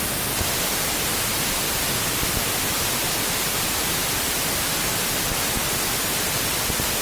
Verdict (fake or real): real